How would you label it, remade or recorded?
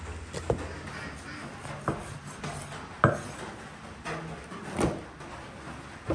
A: recorded